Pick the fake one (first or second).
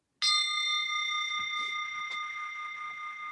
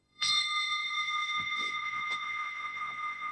second